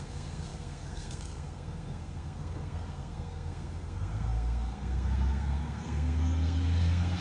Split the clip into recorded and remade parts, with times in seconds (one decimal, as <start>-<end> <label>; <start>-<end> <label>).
0.0-7.2 remade